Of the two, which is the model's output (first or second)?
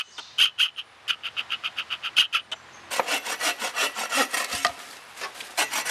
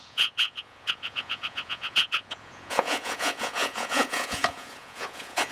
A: second